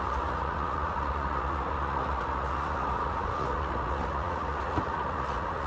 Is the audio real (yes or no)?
no